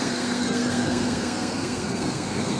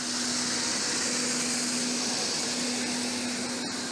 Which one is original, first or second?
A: second